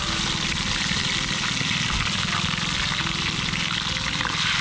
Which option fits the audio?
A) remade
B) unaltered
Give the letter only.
B